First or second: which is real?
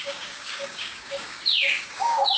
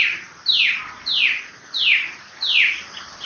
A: second